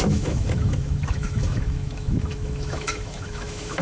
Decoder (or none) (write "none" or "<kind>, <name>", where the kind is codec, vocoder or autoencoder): autoencoder, DAC-VAE